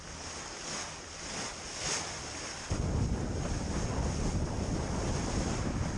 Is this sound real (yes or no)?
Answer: yes